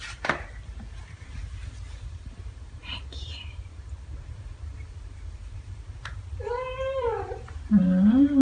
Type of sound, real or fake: fake